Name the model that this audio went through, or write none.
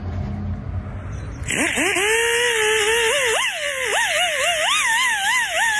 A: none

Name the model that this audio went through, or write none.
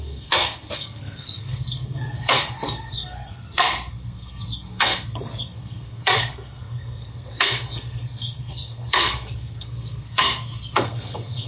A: codec, SNAC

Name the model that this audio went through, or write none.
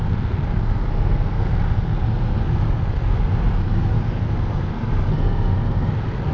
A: codec, SNAC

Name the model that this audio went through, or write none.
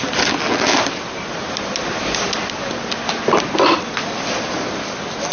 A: none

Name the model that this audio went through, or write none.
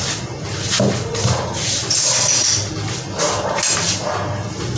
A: none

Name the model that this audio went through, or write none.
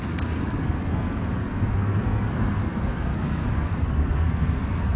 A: codec, SNAC